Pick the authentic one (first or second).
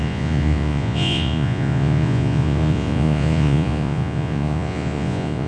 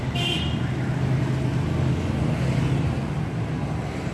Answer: second